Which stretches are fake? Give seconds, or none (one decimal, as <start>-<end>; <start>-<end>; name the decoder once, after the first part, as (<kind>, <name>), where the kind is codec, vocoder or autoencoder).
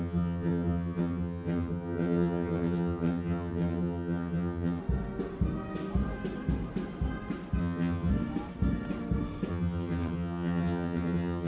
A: 0.0-4.8 (vocoder, HiFi-GAN); 7.6-8.1; 9.5-11.5